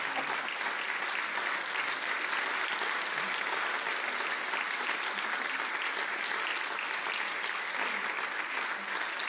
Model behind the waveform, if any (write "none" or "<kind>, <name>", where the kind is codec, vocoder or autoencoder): none